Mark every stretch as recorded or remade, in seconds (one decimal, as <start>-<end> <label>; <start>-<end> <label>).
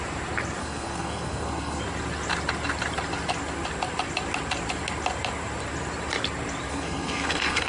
0.0-0.6 recorded; 0.6-1.8 remade; 1.8-6.7 recorded; 6.7-7.7 remade